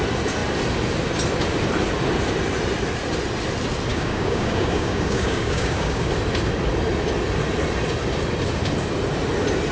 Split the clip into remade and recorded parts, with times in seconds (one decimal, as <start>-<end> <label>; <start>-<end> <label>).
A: 0.0-3.9 recorded; 3.9-6.1 remade; 6.1-9.7 recorded